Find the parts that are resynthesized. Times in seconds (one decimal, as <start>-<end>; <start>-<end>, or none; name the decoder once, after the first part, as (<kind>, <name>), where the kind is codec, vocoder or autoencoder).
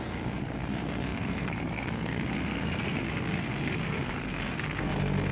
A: 0.0-5.3 (codec, SNAC)